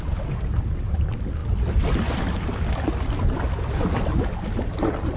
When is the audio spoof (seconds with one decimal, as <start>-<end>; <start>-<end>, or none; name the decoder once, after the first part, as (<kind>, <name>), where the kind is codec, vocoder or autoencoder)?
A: none